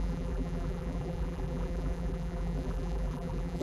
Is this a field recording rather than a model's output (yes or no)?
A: no